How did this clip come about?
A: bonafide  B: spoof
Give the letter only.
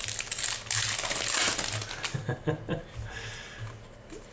A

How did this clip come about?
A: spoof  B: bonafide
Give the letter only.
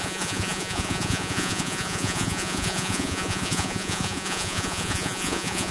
A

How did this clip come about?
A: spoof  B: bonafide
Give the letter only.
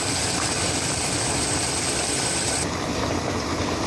B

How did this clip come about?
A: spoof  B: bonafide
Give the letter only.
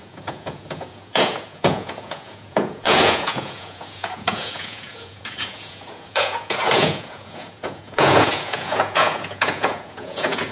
A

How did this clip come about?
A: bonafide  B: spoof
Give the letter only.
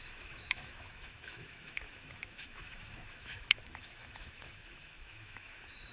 B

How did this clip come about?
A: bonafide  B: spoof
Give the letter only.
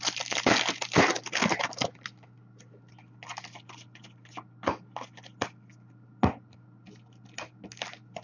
A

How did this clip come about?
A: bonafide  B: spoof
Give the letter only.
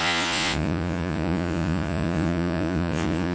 B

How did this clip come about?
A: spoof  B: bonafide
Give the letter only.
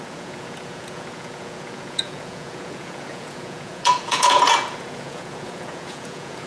A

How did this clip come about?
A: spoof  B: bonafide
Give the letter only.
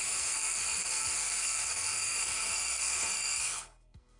A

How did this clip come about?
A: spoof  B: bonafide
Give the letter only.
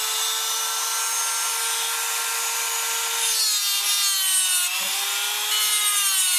B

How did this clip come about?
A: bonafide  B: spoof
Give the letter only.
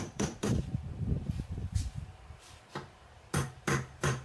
B